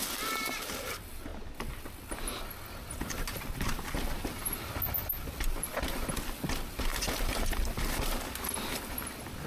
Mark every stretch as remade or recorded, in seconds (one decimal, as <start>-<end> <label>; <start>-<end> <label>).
0.0-9.5 recorded